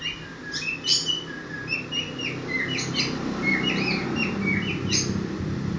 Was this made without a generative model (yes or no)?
yes